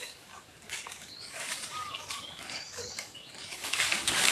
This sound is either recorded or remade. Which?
remade